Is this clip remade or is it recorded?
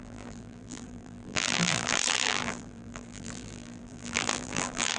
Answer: remade